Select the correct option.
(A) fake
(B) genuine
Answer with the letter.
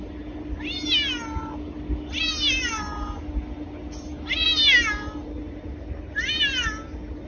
B